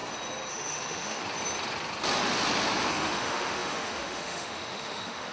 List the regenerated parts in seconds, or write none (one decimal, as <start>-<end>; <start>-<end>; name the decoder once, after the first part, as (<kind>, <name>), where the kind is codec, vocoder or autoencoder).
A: 0.5-1.2 (autoencoder, DAC-VAE); 2.9-5.3